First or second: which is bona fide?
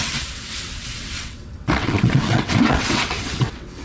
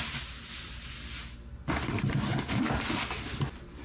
second